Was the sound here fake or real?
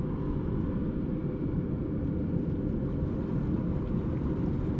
real